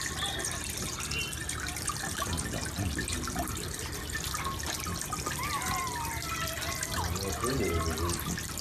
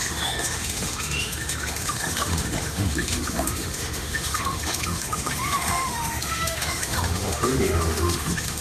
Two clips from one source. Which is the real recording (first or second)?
first